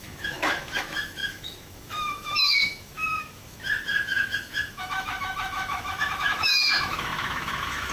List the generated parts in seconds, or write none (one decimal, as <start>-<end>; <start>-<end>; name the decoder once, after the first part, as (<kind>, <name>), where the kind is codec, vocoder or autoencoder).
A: 0.0-7.9 (autoencoder, DAC-VAE)